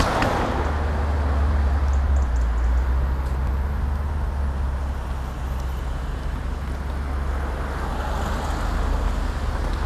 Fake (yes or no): no